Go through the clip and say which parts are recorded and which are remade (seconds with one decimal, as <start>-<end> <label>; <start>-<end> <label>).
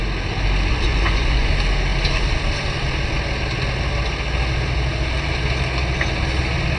0.0-0.7 recorded; 0.7-1.5 remade; 1.5-6.8 recorded